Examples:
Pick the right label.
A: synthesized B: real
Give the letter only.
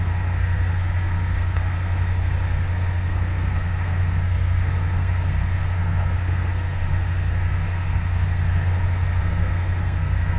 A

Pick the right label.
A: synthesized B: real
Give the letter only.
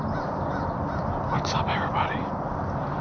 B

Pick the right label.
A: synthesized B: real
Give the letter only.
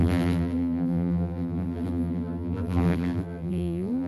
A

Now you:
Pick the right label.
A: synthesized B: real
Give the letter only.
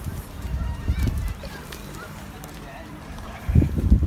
A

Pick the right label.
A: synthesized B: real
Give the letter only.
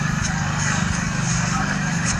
A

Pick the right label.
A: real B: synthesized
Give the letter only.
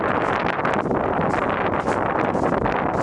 A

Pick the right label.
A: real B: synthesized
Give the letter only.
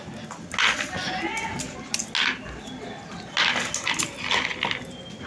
A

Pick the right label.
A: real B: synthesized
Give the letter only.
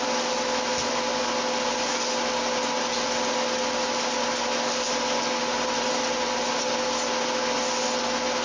A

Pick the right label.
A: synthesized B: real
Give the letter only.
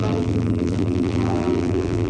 A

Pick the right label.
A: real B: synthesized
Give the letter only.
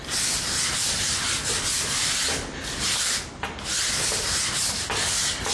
A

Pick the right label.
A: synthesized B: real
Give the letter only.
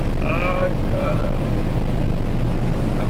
B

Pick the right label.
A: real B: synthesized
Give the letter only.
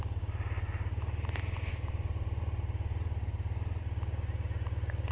A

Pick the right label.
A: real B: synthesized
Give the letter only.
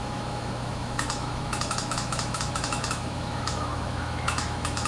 B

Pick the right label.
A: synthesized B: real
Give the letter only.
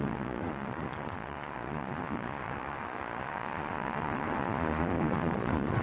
A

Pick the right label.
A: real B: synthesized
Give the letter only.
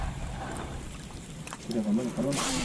B